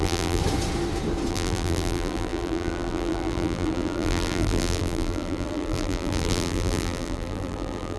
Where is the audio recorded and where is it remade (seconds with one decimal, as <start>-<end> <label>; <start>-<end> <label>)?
0.0-0.4 remade; 0.4-1.3 recorded; 1.3-8.0 remade